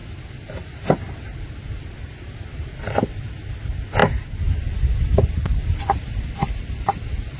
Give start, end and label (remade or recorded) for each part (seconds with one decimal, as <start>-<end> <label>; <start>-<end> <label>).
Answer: 0.0-7.4 recorded